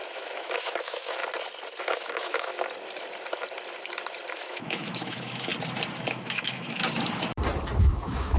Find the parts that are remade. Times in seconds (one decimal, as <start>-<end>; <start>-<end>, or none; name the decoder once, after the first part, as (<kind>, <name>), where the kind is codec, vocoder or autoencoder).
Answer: 0.0-1.2 (autoencoder, DAC-VAE); 1.8-2.5; 4.3-5.5; 6.1-6.8; 7.8-8.4

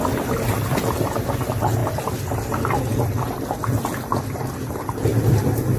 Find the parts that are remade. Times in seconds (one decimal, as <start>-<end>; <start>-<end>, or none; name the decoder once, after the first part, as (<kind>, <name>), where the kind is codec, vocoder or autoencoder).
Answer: none